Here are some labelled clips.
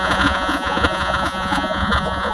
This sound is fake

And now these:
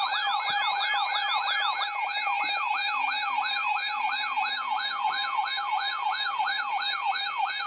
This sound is fake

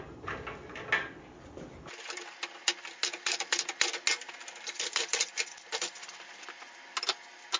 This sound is real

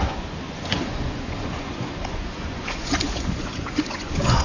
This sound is fake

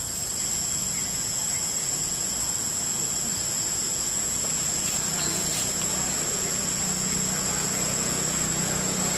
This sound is fake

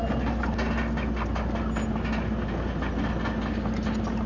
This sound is real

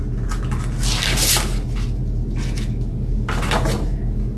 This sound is real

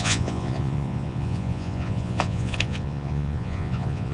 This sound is fake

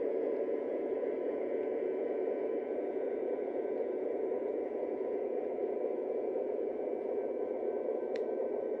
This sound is fake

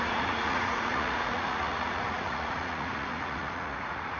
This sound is fake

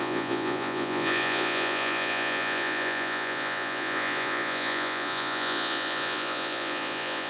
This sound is fake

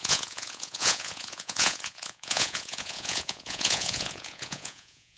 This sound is fake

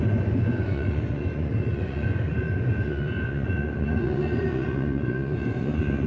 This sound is fake